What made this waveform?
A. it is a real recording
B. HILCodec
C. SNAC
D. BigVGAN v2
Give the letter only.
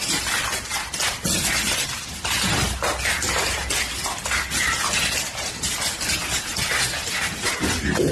A